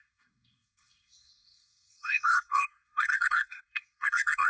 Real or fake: fake